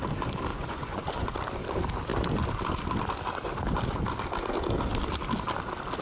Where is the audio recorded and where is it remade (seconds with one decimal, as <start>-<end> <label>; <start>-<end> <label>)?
0.0-0.5 recorded; 0.5-1.3 remade; 1.3-6.0 recorded